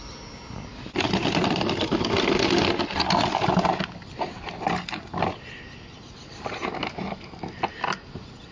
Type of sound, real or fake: real